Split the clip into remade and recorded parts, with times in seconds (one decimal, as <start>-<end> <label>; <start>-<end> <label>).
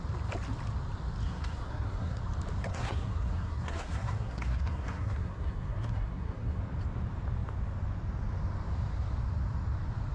0.0-1.2 recorded; 1.2-2.2 remade; 2.2-2.6 recorded; 2.6-6.6 remade; 6.6-10.1 recorded